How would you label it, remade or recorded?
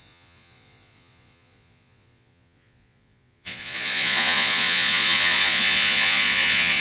remade